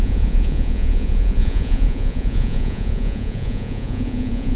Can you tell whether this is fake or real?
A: fake